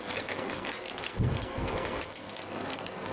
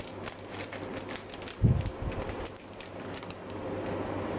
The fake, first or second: first